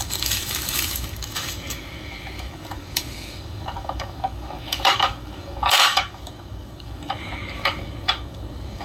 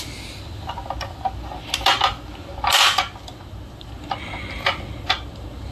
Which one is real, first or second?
second